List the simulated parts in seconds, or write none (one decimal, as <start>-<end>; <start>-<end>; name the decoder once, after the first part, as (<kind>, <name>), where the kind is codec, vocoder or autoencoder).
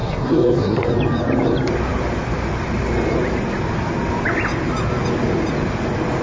0.0-0.9 (codec, SNAC)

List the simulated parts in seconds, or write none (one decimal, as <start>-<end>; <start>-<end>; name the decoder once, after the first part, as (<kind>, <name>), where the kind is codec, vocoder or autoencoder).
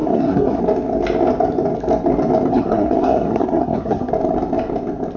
0.0-0.6 (codec, SNAC); 2.5-4.1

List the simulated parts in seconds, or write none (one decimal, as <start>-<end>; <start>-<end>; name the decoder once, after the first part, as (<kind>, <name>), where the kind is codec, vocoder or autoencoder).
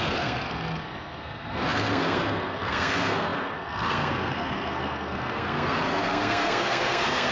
0.0-7.3 (codec, SNAC)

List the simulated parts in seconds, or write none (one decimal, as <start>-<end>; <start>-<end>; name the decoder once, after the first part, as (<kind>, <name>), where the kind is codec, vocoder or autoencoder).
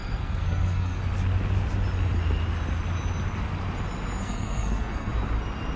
0.0-1.0 (codec, SNAC); 4.2-5.1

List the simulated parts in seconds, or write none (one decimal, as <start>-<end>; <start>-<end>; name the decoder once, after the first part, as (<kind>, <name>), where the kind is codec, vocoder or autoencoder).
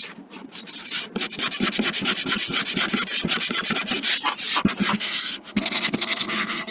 4.9-6.7 (codec, SNAC)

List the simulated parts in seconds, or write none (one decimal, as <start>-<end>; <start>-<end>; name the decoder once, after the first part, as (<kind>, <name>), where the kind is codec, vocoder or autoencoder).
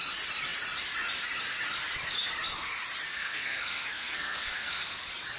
3.1-5.0 (codec, SNAC)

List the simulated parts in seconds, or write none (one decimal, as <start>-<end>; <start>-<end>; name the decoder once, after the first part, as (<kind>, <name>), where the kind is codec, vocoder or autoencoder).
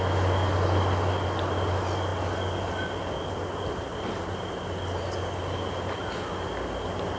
none